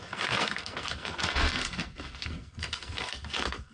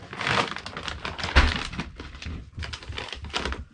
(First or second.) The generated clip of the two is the first